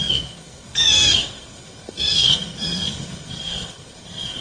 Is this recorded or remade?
remade